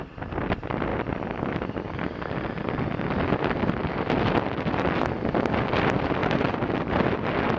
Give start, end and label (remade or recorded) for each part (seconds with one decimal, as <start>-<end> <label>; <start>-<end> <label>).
0.0-6.2 recorded; 6.2-6.8 remade; 6.8-7.6 recorded